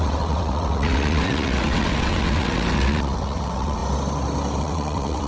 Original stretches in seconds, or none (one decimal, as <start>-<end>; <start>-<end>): 3.8-4.6